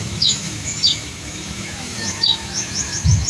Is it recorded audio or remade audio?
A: remade